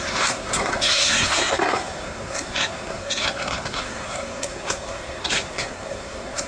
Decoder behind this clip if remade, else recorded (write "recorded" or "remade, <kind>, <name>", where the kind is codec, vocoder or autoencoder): remade, codec, SNAC